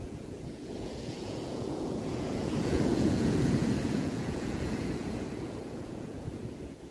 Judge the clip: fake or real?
fake